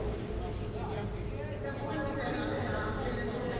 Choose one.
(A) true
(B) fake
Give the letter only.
A